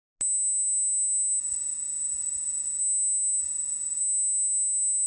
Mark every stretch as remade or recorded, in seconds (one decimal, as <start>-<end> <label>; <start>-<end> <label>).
0.0-1.4 recorded; 1.4-2.8 remade; 2.8-3.4 recorded; 3.4-4.0 remade; 4.0-5.1 recorded